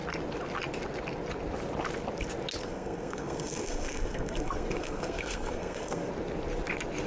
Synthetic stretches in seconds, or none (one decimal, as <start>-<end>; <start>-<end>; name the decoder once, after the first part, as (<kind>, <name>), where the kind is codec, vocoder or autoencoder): 2.6-6.1 (codec, SNAC)